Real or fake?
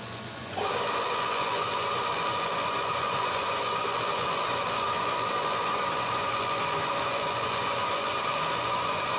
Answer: fake